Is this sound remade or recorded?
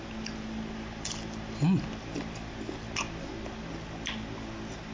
recorded